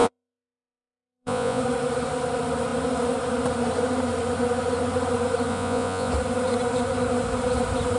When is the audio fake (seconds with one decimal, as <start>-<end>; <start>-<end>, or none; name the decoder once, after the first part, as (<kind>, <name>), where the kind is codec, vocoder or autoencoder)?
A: 0.0-1.6 (vocoder, Vocos); 5.5-6.1